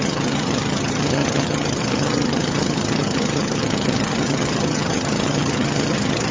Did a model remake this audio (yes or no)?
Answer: yes